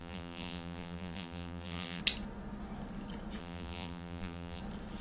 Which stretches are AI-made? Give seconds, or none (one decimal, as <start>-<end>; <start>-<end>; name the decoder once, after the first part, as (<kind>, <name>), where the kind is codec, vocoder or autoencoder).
0.0-2.0 (vocoder, BigVGAN v2); 3.4-4.6